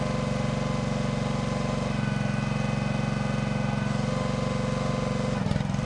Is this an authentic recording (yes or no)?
yes